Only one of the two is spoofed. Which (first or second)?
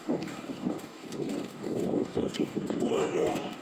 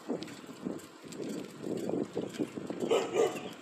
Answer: first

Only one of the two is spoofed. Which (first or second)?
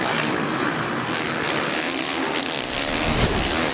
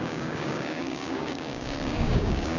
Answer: second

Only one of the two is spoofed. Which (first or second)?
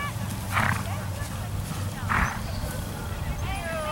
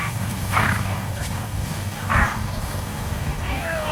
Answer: second